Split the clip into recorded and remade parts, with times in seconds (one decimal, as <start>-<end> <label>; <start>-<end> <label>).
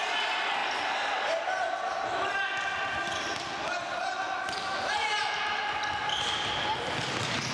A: 0.0-7.5 recorded